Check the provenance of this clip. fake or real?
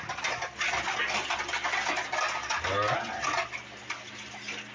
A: real